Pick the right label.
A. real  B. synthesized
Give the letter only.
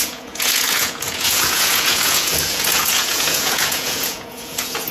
B